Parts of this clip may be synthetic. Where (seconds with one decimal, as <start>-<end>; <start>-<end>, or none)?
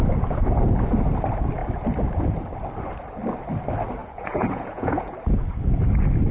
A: 4.0-5.6